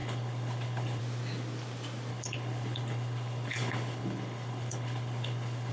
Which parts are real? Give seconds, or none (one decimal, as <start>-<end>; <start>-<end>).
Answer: 1.0-2.1